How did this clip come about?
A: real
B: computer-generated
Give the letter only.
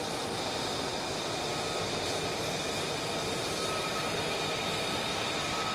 A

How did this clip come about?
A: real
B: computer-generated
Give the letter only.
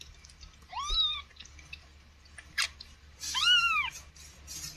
A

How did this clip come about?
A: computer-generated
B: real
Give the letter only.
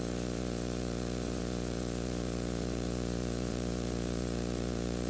A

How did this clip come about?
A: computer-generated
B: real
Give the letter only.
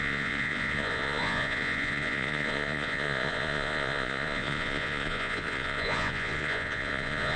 A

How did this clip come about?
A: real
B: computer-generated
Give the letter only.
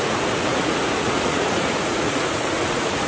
B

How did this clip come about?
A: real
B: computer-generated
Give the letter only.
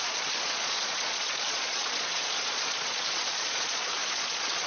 B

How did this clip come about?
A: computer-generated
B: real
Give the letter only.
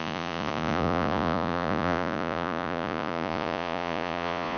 A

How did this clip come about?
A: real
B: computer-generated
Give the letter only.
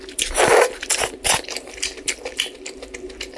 A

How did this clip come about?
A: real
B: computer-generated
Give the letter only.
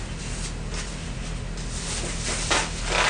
A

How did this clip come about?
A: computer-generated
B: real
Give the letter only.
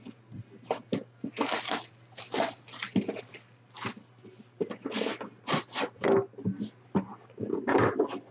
B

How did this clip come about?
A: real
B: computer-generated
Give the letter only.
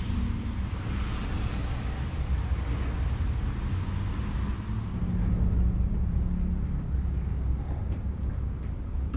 A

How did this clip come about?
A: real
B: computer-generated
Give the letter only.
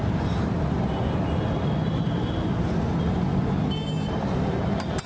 A